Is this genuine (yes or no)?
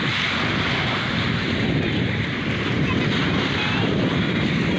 yes